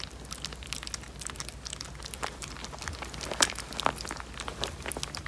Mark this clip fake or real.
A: real